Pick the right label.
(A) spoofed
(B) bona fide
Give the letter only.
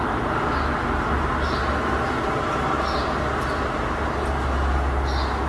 B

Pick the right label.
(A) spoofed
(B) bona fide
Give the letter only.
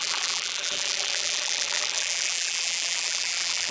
A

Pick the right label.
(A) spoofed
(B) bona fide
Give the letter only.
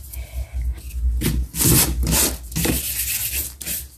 B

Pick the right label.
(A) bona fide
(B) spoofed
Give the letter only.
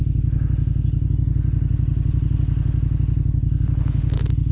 A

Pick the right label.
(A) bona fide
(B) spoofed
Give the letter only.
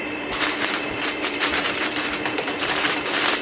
B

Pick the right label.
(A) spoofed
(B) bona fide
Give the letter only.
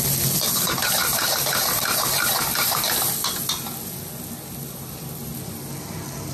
B